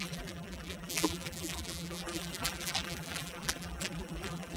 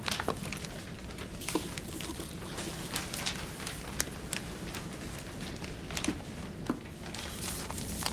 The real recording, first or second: second